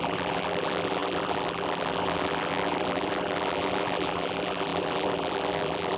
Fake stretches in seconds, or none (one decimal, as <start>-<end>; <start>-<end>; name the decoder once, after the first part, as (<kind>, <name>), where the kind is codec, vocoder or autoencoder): 0.0-6.0 (vocoder, BigVGAN v2)